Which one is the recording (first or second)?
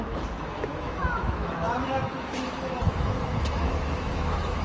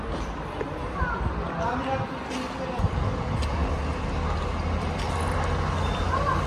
second